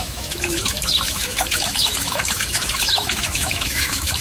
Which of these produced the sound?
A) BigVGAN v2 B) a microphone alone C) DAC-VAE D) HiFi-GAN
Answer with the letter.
C